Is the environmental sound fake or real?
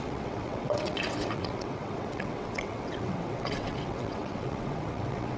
fake